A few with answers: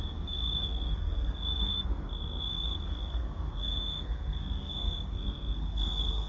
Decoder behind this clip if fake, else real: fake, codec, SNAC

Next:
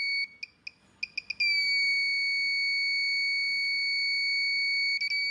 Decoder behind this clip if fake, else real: real